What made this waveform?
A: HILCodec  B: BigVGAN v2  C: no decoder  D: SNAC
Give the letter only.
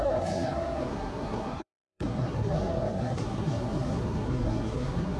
D